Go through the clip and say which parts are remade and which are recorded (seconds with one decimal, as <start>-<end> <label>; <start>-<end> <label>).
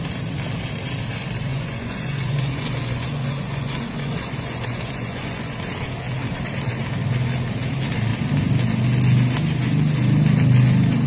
0.0-1.5 recorded; 1.5-5.6 remade; 5.6-11.1 recorded